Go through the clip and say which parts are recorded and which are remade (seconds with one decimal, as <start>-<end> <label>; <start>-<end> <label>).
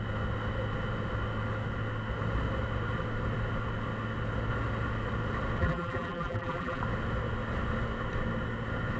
0.0-5.6 recorded; 5.6-6.8 remade; 6.8-9.0 recorded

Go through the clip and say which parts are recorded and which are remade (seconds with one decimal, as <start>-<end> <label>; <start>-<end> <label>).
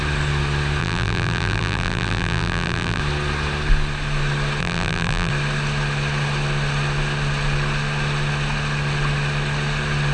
0.0-0.8 recorded; 0.8-3.0 remade; 3.0-4.6 recorded; 4.6-5.3 remade; 5.3-10.1 recorded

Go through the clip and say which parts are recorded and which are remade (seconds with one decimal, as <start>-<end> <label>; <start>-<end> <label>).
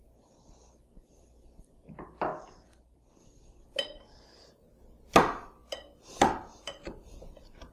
0.0-2.3 recorded; 2.3-3.2 remade; 3.2-5.6 recorded; 5.6-7.7 remade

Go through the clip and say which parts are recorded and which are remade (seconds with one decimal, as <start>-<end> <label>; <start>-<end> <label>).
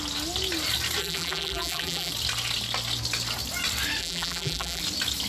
0.0-1.0 recorded; 1.0-2.1 remade; 2.1-4.0 recorded; 4.0-4.8 remade; 4.8-5.3 recorded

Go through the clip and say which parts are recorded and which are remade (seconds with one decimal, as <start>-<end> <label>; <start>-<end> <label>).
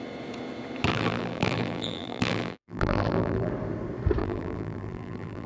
0.0-0.9 recorded; 0.9-3.5 remade; 3.5-4.2 recorded; 4.2-5.5 remade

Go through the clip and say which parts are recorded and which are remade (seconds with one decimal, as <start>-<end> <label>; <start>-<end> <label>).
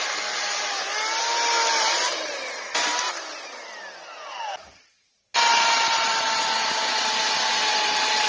0.0-5.5 recorded; 5.5-6.1 remade; 6.1-8.3 recorded